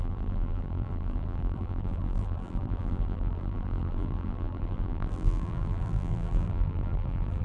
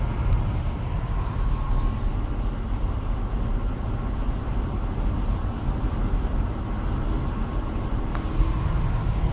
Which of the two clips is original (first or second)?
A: second